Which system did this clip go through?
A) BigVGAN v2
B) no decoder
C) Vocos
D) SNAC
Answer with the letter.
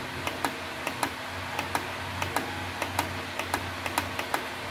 B